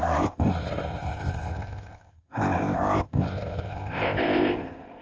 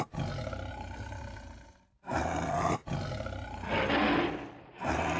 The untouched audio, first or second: second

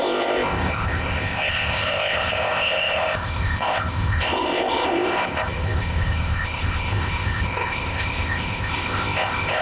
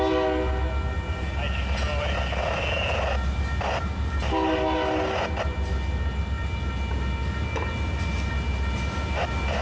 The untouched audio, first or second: second